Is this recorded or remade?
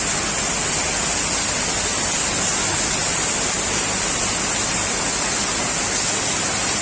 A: recorded